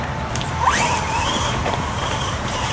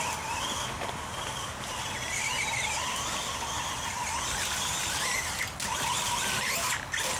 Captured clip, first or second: second